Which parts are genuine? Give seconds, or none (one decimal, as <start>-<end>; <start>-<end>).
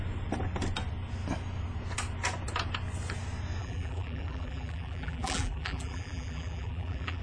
0.0-3.6